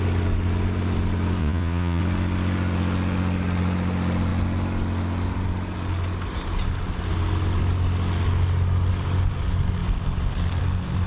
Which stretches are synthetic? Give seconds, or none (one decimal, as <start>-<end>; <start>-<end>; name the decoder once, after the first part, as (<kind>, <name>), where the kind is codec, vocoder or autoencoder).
1.4-2.0 (vocoder, Vocos)